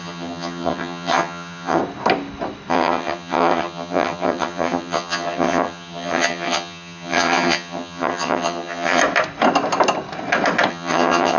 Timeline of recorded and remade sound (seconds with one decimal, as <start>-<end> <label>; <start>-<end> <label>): 0.0-1.8 remade; 1.8-2.7 recorded; 2.7-9.0 remade; 9.0-10.7 recorded; 10.7-11.4 remade